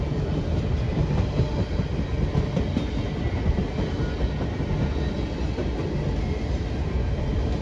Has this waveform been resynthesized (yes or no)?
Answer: no